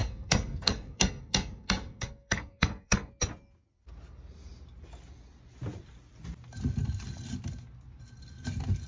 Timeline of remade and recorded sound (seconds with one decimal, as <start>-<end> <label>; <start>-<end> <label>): 0.0-3.1 remade; 3.1-8.9 recorded